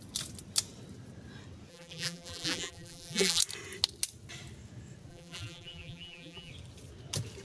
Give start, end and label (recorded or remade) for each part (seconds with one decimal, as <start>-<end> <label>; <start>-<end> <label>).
0.0-1.7 recorded; 1.7-3.4 remade; 3.4-5.1 recorded; 5.1-6.5 remade; 6.5-7.4 recorded